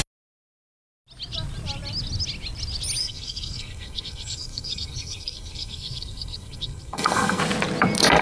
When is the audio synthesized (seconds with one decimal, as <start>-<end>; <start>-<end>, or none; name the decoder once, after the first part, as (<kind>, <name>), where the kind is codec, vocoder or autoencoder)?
3.0-7.4 (codec, SNAC)